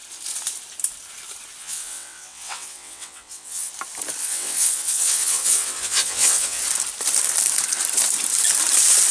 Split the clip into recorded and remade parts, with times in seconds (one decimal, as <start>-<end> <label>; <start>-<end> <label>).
0.0-1.6 recorded; 1.6-3.7 remade; 3.7-4.2 recorded; 4.2-6.6 remade; 6.6-9.1 recorded